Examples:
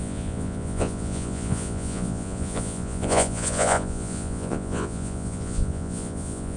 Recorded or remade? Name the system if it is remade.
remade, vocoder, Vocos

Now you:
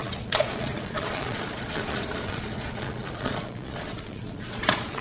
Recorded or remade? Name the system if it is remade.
remade, vocoder, Vocos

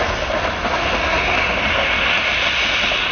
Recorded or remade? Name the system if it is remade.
recorded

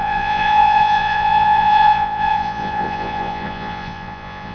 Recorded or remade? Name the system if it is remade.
remade, vocoder, Vocos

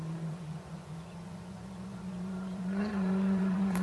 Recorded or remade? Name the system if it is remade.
remade, vocoder, Vocos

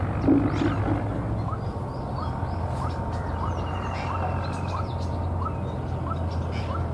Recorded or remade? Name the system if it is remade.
recorded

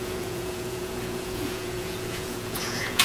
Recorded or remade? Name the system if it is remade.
remade, vocoder, Vocos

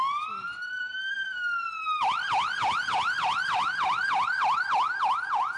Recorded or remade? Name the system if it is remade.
recorded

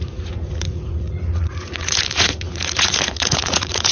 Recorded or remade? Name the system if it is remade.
remade, vocoder, Vocos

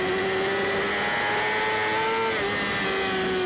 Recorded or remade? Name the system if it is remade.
recorded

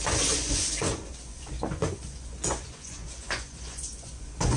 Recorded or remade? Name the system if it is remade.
remade, vocoder, Vocos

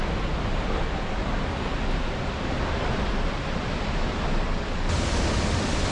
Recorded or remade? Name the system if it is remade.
recorded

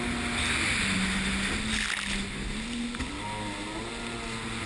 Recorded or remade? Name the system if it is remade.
recorded